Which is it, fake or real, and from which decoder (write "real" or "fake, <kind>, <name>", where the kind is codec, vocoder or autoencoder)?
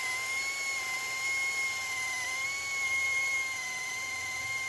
real